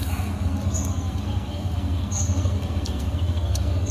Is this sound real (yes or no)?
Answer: no